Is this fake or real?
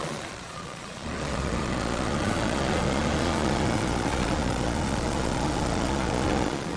fake